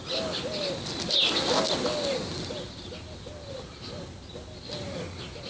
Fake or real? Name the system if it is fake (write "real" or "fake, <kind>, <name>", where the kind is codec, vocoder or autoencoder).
real